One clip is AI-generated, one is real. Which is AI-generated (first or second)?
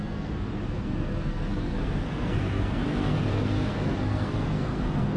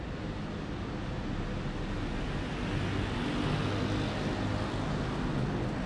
first